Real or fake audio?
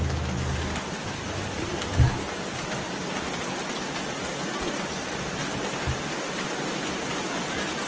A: real